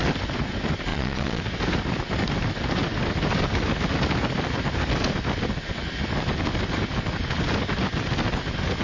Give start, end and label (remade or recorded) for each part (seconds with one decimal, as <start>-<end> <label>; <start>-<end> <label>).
0.0-0.9 recorded; 0.9-1.4 remade; 1.4-8.8 recorded